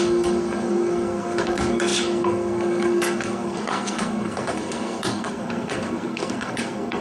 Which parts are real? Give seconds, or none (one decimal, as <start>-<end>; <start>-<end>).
none